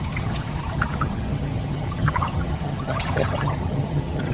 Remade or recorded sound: remade